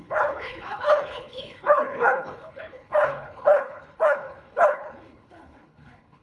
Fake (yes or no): yes